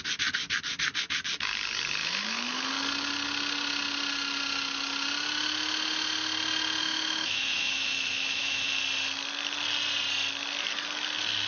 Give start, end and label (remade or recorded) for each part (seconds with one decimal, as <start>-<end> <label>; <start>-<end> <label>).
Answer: 0.0-2.0 recorded; 2.0-2.7 remade; 2.7-6.8 recorded; 6.8-8.7 remade; 8.7-11.5 recorded